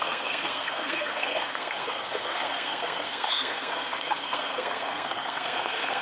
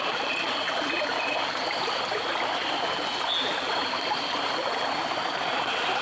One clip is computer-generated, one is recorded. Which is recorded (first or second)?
second